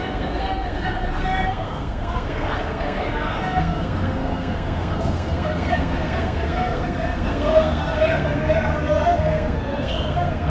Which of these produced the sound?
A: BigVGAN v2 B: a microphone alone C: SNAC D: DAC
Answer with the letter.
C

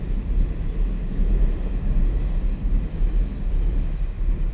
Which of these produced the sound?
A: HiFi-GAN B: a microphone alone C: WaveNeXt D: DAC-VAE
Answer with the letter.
B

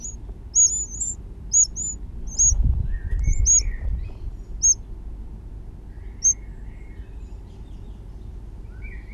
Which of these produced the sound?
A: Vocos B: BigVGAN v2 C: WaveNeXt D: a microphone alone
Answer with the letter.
D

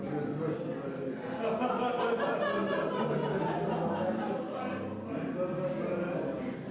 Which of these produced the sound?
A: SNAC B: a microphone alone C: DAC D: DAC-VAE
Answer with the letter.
B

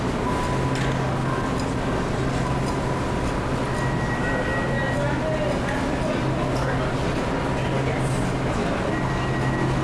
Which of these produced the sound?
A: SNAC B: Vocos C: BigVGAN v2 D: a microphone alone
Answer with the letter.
D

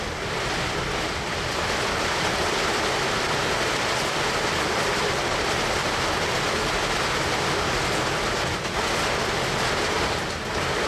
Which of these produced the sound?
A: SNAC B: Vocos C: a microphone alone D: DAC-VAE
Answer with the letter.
C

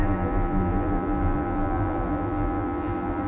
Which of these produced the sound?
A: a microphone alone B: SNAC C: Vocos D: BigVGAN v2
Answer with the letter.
D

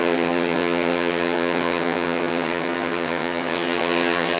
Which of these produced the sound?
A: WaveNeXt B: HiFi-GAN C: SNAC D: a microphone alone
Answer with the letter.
B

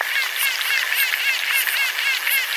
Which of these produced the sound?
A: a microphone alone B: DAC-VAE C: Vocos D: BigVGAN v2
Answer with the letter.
A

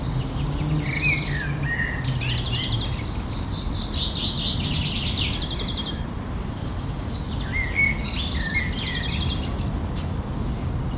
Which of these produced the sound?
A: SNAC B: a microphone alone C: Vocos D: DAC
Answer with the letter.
B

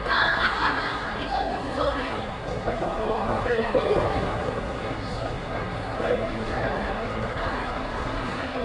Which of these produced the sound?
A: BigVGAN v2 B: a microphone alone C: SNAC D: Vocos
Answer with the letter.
C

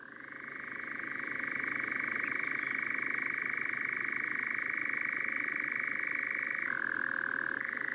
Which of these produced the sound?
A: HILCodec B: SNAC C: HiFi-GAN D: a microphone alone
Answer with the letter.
D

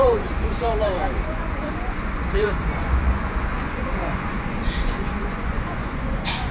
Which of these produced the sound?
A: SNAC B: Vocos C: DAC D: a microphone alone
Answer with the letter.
B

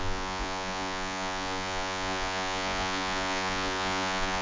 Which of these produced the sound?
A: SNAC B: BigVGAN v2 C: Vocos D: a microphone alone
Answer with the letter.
C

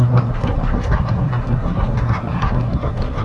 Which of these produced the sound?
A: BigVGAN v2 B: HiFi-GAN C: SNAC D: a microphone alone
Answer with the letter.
C